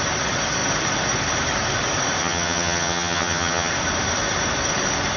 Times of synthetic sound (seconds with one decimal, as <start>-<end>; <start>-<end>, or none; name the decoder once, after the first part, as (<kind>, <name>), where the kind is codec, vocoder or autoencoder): 2.2-3.7 (vocoder, HiFi-GAN)